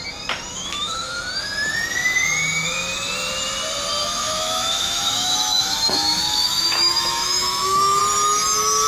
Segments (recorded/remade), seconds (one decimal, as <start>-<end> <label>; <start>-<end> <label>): 0.0-0.5 recorded; 0.5-1.2 remade; 1.2-4.0 recorded; 4.0-8.0 remade; 8.0-8.9 recorded

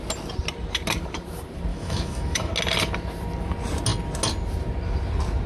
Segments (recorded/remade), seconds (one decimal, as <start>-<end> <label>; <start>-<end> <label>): 0.0-1.7 recorded; 1.7-2.5 remade; 2.5-5.5 recorded

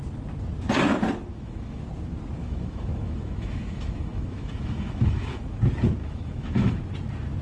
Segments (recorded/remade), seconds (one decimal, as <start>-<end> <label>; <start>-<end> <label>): 0.0-1.3 recorded; 1.3-1.8 remade; 1.8-2.4 recorded; 2.4-5.6 remade; 5.6-6.0 recorded; 6.0-6.8 remade; 6.8-7.4 recorded